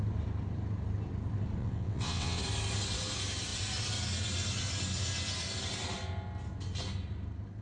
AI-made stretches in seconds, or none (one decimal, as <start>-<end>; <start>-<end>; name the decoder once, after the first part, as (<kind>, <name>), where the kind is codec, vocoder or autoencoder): 1.6-2.4 (vocoder, WaveNeXt)